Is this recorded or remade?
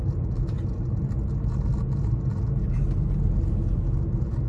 recorded